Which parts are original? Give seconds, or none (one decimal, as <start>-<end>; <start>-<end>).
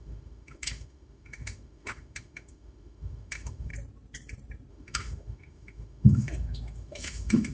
3.7-4.7